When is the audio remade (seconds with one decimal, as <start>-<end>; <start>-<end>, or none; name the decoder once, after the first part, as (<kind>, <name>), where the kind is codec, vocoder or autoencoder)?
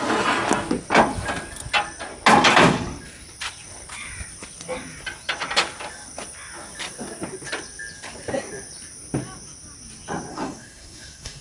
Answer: 10.3-11.4 (codec, SNAC)